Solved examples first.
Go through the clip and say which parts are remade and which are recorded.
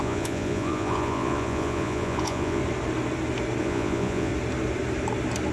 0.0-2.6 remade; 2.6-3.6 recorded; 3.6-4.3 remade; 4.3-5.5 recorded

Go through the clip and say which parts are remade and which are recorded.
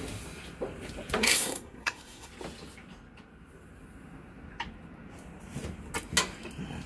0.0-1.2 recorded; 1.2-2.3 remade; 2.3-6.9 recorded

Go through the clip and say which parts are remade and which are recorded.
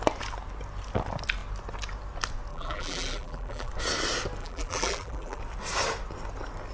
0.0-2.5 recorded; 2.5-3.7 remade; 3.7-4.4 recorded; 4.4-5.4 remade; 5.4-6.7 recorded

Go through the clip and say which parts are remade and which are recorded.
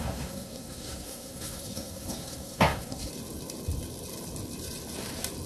0.0-3.1 remade; 3.1-5.5 recorded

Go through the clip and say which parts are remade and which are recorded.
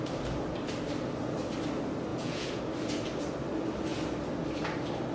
0.0-2.1 recorded; 2.1-2.6 remade; 2.6-5.1 recorded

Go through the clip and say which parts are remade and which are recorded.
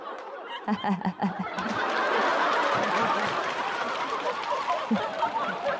0.0-5.8 recorded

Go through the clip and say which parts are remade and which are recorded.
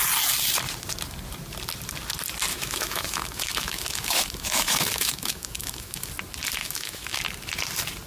0.0-2.5 recorded; 2.5-6.1 remade; 6.1-6.6 recorded; 6.6-7.2 remade; 7.2-8.1 recorded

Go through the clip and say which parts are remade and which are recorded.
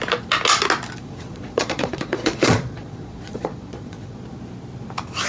0.0-1.0 recorded; 1.0-4.2 remade; 4.2-5.3 recorded